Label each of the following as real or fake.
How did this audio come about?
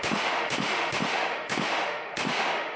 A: fake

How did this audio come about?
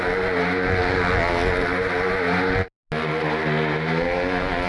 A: real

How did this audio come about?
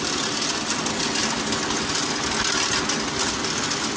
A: real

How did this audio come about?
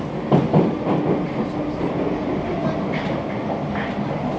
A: real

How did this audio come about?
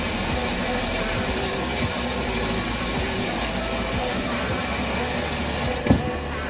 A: real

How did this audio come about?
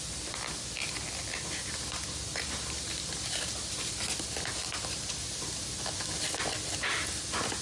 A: real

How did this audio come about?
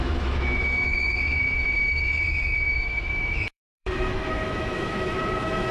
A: fake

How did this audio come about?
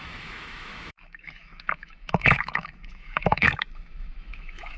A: fake